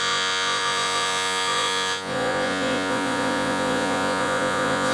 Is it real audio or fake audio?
fake